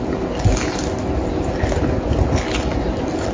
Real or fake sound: real